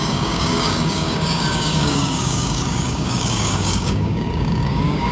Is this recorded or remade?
remade